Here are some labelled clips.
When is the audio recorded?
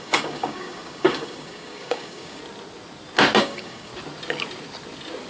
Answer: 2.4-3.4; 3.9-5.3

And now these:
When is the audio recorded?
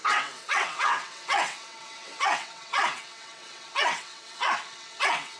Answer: none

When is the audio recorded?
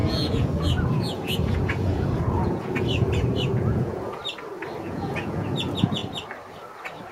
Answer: 4.2-4.8; 6.0-7.1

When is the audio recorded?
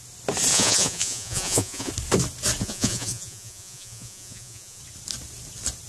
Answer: 0.0-0.5; 1.9-2.6; 4.8-5.9